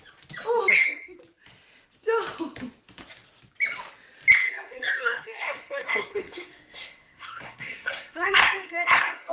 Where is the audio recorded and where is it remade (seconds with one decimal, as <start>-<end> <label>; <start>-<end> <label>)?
0.0-0.7 recorded; 0.7-1.2 remade; 1.2-4.4 recorded; 4.4-9.3 remade